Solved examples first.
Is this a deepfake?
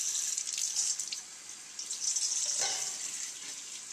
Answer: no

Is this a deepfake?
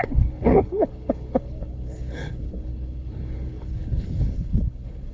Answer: yes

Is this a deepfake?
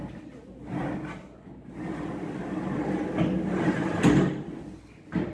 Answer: no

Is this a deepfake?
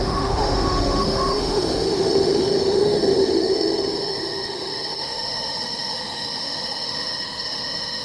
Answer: yes